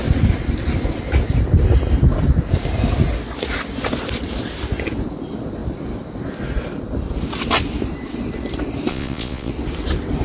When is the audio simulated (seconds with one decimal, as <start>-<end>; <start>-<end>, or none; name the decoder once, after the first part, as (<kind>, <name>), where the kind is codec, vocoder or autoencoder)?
8.9-9.5 (vocoder, Vocos)